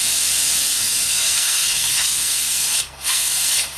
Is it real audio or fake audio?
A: fake